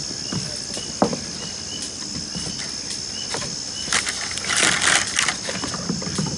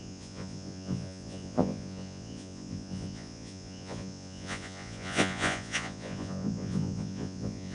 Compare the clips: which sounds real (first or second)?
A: first